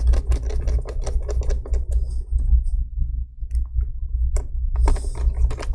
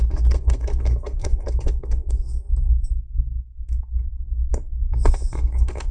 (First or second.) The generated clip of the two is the second